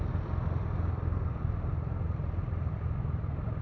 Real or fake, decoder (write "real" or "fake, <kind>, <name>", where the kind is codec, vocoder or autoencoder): real